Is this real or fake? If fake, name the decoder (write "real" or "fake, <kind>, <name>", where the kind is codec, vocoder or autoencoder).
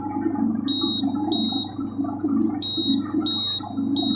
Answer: real